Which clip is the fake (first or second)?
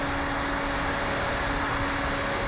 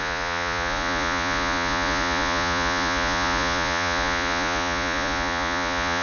second